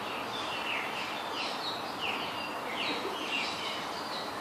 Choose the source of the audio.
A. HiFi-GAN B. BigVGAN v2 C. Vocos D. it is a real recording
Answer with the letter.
D